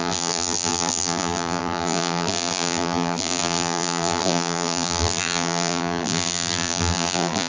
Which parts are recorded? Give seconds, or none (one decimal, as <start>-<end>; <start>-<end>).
none